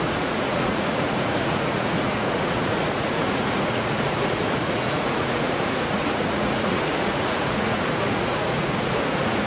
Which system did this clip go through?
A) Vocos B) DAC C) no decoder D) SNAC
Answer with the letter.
A